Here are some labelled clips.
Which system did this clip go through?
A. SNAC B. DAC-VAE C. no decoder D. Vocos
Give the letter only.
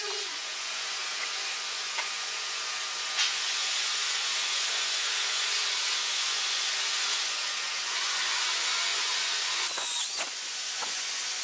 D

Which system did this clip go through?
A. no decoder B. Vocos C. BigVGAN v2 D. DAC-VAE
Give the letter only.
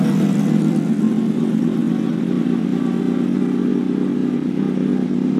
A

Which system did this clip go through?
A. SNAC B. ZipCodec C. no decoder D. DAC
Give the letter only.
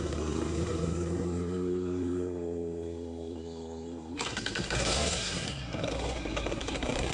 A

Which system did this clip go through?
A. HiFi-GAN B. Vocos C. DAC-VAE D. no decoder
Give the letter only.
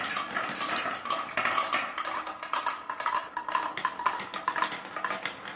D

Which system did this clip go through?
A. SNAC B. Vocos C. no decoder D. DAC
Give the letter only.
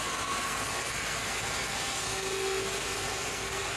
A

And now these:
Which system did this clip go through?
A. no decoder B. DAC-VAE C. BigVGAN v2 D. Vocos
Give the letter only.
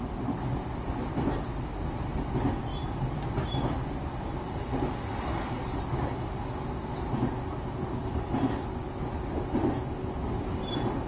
A